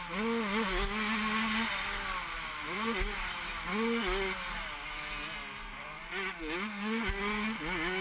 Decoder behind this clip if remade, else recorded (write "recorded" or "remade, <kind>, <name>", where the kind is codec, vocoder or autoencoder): recorded